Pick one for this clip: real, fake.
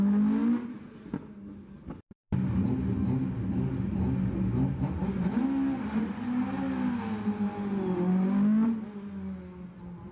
real